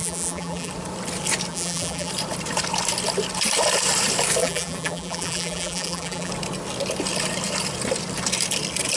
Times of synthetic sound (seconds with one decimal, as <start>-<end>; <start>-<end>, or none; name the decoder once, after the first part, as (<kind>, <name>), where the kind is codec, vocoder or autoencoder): 0.0-0.7 (vocoder, BigVGAN v2); 1.5-2.1; 4.4-6.3